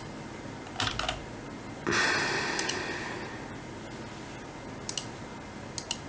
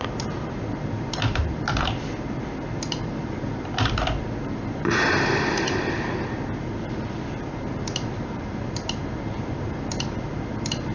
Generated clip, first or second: second